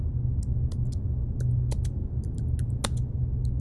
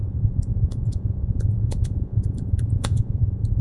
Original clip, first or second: first